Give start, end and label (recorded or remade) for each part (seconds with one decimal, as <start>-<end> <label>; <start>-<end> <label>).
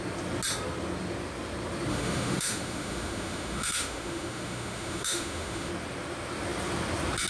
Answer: 0.0-1.9 recorded; 1.9-5.7 remade; 5.7-7.3 recorded